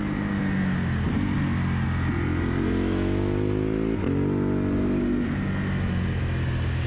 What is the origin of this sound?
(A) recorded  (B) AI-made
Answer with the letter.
A